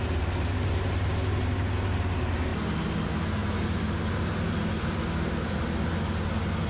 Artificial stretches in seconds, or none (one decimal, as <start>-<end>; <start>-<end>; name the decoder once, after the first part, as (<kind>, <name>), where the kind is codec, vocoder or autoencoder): none